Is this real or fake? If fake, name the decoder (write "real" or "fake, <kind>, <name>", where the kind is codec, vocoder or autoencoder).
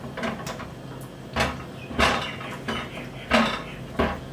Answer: real